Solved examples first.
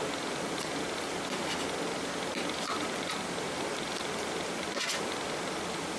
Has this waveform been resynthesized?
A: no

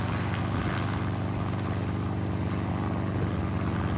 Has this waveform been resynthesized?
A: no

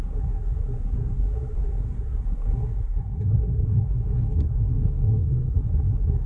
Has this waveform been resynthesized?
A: yes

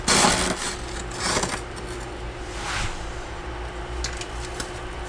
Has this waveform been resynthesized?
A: no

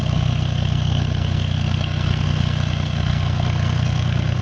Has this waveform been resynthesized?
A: yes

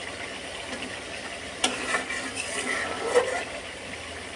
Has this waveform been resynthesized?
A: no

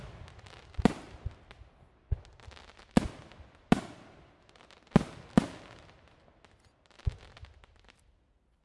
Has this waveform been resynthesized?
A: no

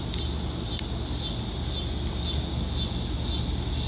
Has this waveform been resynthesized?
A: no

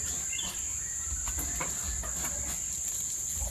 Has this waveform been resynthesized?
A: no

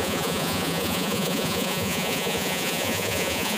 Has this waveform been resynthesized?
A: yes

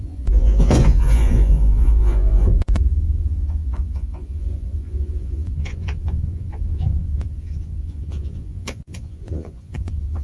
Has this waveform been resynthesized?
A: yes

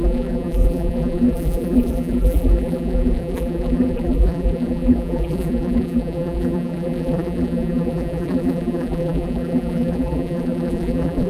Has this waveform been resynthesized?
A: yes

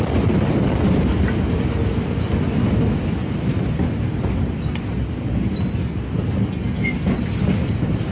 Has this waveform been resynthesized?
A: no